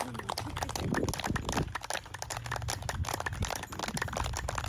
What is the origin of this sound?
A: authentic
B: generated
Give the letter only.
A